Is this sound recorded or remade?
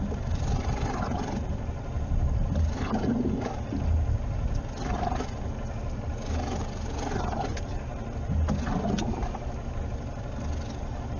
recorded